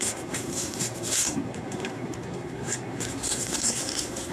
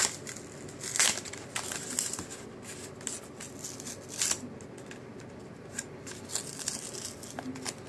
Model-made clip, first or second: first